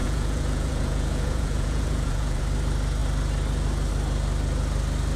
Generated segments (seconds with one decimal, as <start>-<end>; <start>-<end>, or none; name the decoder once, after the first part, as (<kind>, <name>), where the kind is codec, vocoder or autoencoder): 0.0-2.4 (vocoder, Vocos)